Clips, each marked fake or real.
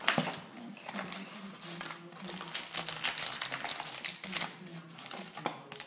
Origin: real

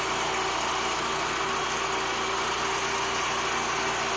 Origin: real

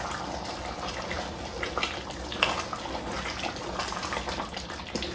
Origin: real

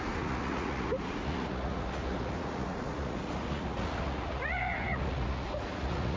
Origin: fake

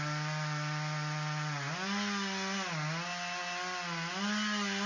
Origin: real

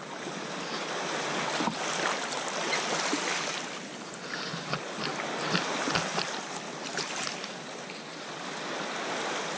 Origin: real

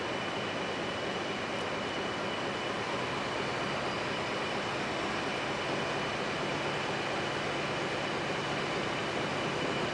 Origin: real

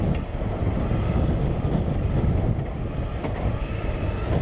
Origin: real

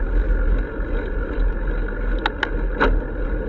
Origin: real